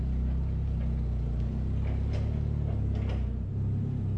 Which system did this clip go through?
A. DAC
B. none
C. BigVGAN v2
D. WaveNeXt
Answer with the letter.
B